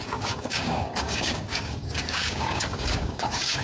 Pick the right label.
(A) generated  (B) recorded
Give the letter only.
A